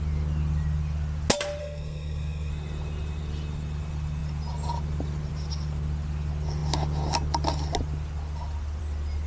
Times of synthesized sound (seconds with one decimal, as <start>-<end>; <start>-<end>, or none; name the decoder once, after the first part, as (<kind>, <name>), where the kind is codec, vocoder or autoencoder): 1.6-2.5 (codec, SNAC)

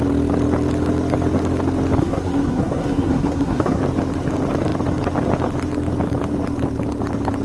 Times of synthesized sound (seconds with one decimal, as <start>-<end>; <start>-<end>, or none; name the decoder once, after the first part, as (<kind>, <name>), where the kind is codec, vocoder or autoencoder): 2.0-3.8 (codec, SNAC)

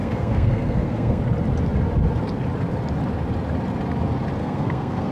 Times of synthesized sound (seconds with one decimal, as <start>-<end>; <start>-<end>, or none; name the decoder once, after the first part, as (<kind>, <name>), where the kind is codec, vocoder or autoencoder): 0.0-1.2 (codec, SNAC); 4.4-5.1